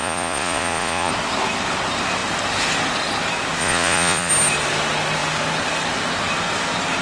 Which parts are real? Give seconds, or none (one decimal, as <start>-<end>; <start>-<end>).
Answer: 1.1-3.6; 4.3-7.0